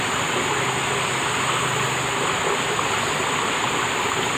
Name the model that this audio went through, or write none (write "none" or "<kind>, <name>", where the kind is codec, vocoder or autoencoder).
none